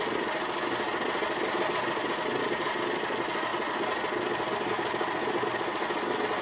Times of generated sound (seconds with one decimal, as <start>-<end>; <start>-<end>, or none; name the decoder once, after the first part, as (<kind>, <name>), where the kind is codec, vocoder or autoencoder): none